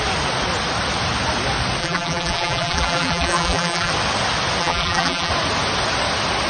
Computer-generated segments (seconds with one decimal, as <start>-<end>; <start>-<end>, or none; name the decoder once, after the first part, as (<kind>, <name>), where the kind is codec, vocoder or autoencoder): 1.8-3.9 (vocoder, BigVGAN v2); 4.6-5.3